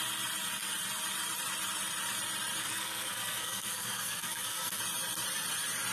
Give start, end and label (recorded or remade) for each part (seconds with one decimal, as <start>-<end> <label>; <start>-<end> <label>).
0.0-2.6 recorded; 2.6-4.8 remade; 4.8-5.9 recorded